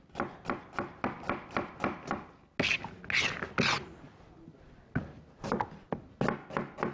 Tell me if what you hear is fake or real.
real